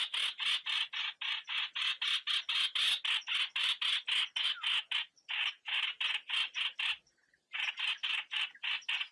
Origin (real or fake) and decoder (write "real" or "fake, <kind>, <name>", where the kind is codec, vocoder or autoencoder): real